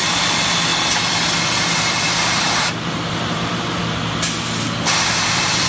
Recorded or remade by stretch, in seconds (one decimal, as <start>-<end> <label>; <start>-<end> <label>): 0.0-0.7 remade; 0.7-1.3 recorded; 1.3-3.8 remade; 3.8-4.6 recorded; 4.6-5.7 remade

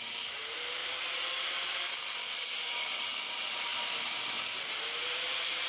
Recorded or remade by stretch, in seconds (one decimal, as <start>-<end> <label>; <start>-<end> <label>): 0.0-0.8 remade; 0.8-3.2 recorded; 3.2-5.7 remade

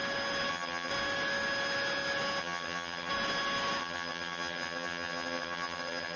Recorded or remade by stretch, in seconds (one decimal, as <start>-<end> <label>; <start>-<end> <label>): 0.0-0.5 recorded; 0.5-0.9 remade; 0.9-2.4 recorded; 2.4-3.1 remade; 3.1-3.8 recorded; 3.8-6.2 remade

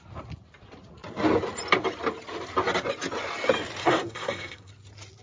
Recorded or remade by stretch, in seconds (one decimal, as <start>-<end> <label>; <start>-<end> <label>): 0.0-3.8 recorded; 3.8-4.7 remade; 4.7-5.2 recorded

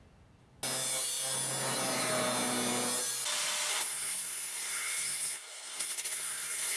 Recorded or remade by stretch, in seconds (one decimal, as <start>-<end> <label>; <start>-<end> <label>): 0.0-3.7 recorded; 3.7-6.8 remade